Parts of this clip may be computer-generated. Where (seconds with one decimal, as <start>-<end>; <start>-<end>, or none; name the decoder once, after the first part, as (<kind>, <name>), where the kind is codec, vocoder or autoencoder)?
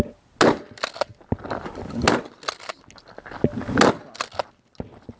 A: none